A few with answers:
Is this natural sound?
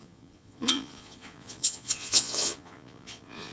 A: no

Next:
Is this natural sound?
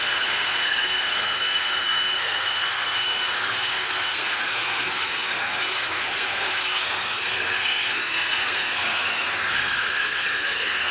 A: no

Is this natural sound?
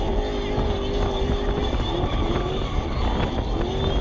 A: yes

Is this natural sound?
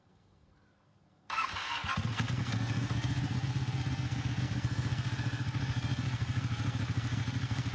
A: no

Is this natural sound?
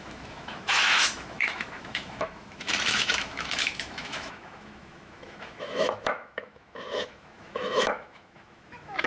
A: no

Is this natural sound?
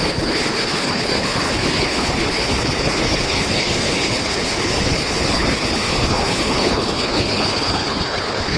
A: no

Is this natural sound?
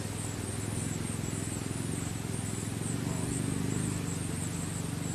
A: yes